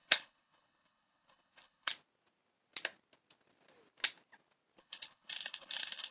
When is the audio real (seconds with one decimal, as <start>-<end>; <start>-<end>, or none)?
1.9-4.8